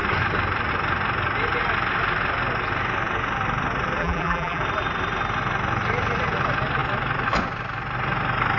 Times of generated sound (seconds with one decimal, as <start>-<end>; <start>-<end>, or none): 4.0-4.6